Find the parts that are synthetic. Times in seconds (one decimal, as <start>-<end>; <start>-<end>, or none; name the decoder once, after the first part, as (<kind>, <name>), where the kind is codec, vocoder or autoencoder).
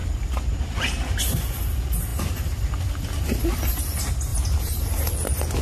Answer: 0.0-1.6 (vocoder, BigVGAN v2); 4.3-5.0